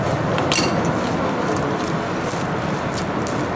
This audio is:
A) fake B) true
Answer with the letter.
B